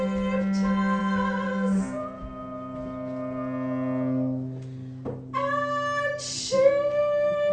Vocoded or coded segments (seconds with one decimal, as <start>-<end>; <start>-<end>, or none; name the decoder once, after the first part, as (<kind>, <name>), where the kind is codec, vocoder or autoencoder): none